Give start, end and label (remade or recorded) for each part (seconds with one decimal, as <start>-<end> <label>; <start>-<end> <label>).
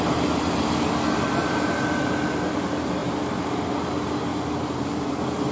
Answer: 0.0-1.4 recorded; 1.4-2.2 remade; 2.2-3.0 recorded; 3.0-3.7 remade; 3.7-4.3 recorded; 4.3-5.1 remade; 5.1-5.5 recorded